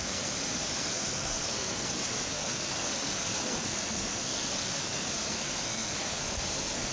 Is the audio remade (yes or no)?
yes